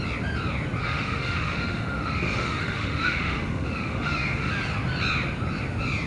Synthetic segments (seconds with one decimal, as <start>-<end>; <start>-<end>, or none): 0.8-4.5